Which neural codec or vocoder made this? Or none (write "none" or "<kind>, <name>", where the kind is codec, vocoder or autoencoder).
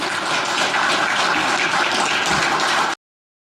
none